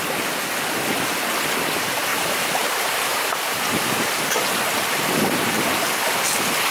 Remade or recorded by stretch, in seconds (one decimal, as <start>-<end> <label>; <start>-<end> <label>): 0.0-2.1 recorded; 2.1-4.6 remade; 4.6-6.7 recorded